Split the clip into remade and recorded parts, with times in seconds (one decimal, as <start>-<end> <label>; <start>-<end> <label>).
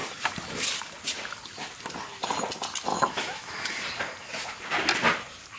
0.0-2.9 recorded; 2.9-3.7 remade; 3.7-5.6 recorded